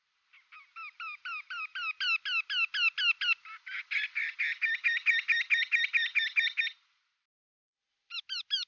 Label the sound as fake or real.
real